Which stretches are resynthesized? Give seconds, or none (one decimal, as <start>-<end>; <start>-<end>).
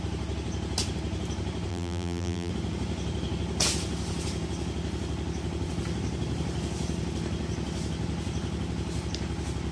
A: 1.7-2.5